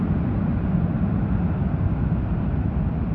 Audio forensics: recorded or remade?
recorded